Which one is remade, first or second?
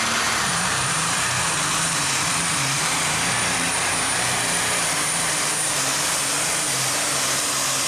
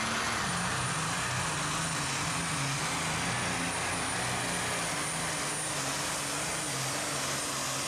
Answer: first